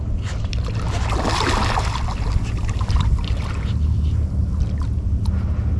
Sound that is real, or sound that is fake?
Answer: real